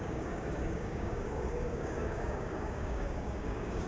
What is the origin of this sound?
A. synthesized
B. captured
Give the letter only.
A